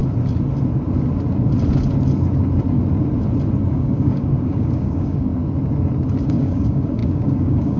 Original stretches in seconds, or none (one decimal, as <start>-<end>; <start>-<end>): 0.0-3.7; 5.3-6.3